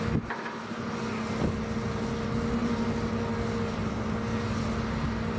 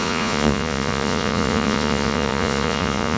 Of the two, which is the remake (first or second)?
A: second